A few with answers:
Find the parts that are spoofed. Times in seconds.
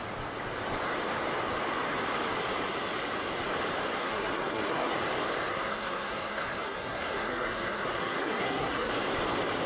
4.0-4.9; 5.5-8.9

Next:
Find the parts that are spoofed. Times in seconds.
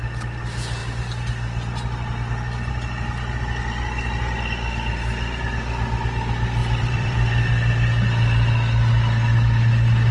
6.6-7.5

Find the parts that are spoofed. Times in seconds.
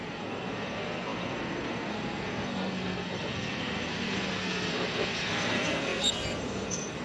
0.0-7.0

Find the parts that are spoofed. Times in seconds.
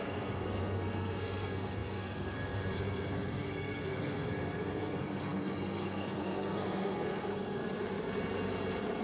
0.0-7.6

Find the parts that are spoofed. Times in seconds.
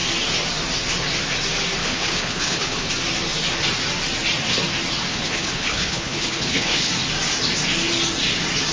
1.8-2.9; 5.1-6.9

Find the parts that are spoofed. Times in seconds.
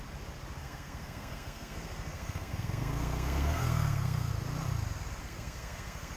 0.6-4.3; 5.2-6.2